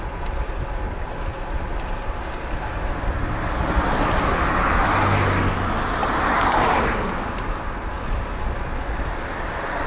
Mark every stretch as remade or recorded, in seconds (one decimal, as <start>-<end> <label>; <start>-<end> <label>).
0.0-9.9 recorded